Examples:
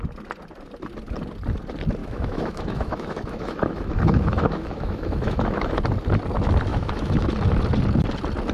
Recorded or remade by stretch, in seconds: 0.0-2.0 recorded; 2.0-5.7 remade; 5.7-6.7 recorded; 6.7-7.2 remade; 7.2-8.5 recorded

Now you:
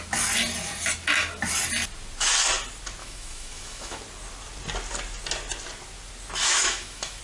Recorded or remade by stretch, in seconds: 0.0-3.0 recorded; 3.0-4.0 remade; 4.0-6.4 recorded; 6.4-7.2 remade

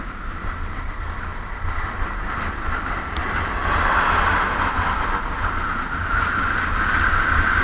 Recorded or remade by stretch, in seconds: 0.0-7.6 recorded

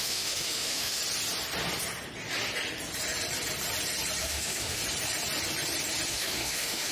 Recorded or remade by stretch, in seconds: 0.0-1.0 remade; 1.0-4.2 recorded; 4.2-4.8 remade; 4.8-6.1 recorded; 6.1-6.9 remade

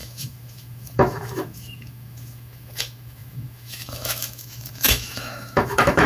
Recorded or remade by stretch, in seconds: 0.0-6.1 remade